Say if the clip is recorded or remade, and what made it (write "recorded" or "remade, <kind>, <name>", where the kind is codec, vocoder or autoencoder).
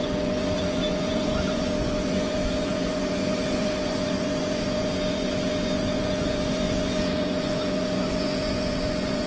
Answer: remade, vocoder, Vocos